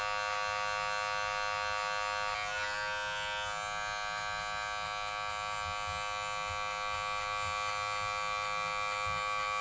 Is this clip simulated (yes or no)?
no